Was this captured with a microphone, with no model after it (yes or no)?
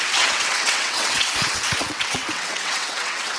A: no